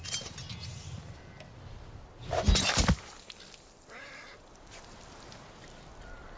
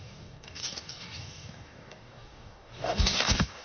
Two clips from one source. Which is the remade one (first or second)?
second